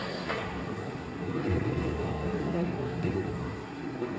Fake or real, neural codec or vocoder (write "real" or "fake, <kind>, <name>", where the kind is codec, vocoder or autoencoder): fake, codec, SNAC